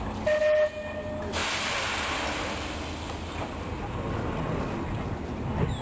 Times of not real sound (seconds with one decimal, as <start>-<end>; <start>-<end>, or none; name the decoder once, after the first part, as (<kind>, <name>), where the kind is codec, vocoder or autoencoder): none